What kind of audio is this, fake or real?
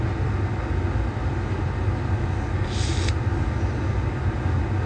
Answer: real